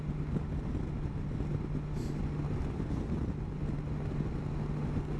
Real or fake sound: real